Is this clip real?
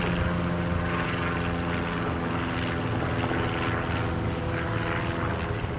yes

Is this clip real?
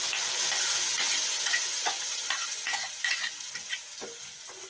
no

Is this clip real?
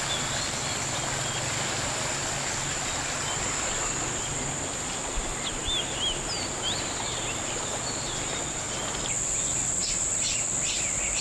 yes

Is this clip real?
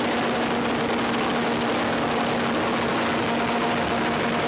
yes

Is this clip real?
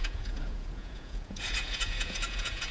no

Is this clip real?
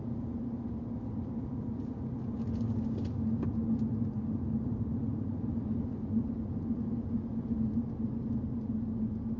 yes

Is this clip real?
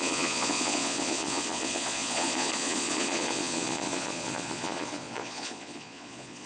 no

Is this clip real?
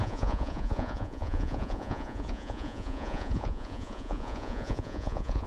no